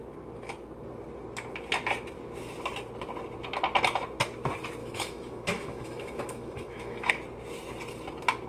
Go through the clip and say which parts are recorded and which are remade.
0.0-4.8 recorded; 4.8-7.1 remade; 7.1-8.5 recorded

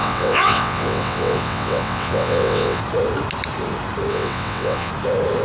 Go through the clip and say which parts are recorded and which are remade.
0.0-2.8 remade; 2.8-4.1 recorded; 4.1-4.9 remade; 4.9-5.4 recorded

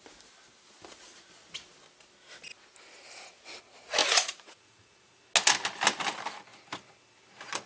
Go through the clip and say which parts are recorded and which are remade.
0.0-4.0 recorded; 4.0-5.2 remade; 5.2-7.7 recorded

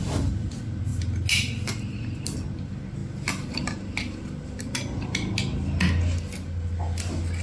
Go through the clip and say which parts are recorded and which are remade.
0.0-7.4 recorded

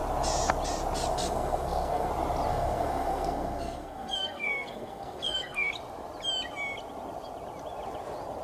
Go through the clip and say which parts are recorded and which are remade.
0.0-1.1 recorded; 1.1-2.1 remade; 2.1-2.5 recorded; 2.5-5.7 remade; 5.7-8.4 recorded

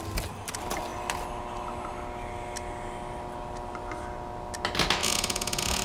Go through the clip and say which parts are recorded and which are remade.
0.0-5.0 recorded; 5.0-5.8 remade

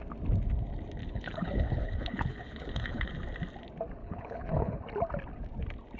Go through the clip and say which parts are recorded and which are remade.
0.0-1.0 recorded; 1.0-3.1 remade; 3.1-4.0 recorded; 4.0-4.8 remade; 4.8-6.0 recorded